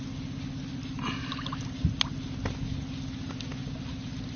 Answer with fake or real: real